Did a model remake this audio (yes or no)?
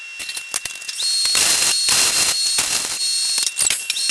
no